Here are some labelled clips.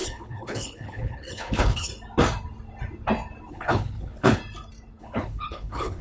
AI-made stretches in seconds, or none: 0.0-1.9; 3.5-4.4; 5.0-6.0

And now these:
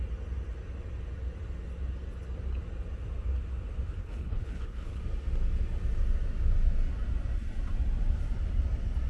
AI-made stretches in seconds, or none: 4.0-5.0

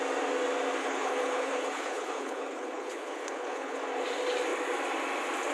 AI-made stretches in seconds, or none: 0.8-3.8